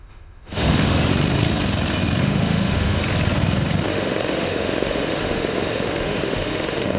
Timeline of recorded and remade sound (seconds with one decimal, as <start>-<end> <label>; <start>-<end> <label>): 0.0-1.1 remade; 1.1-2.2 recorded; 2.2-3.0 remade; 3.0-3.9 recorded; 3.9-7.0 remade